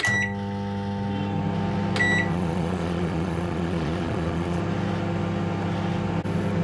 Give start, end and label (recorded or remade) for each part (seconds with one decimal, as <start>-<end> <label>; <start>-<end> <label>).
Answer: 0.0-2.3 recorded; 2.3-4.6 remade; 4.6-6.6 recorded